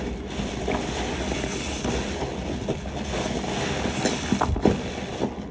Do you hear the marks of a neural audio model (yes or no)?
no